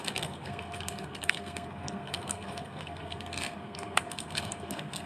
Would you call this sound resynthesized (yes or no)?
yes